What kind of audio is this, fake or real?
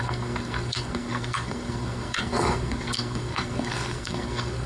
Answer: fake